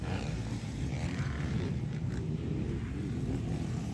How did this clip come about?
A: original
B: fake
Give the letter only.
B